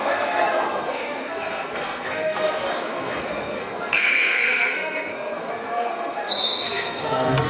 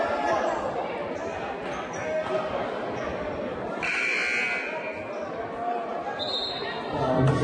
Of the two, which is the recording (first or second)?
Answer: second